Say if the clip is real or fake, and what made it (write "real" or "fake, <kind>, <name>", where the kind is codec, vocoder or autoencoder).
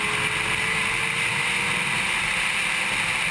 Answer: real